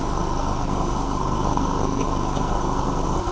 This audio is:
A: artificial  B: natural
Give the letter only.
A